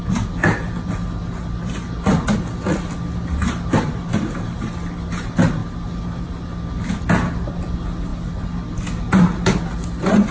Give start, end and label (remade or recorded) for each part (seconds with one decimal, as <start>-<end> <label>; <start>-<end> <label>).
0.0-10.3 recorded